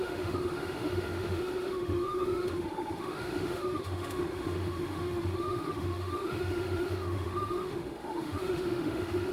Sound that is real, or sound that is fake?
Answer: fake